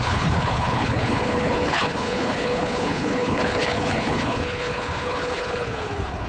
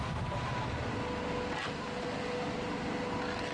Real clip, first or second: second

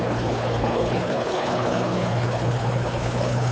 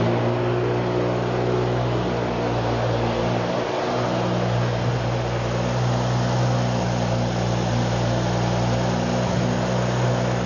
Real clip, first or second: second